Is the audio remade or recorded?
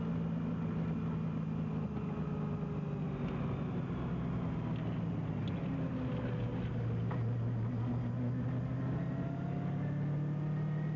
recorded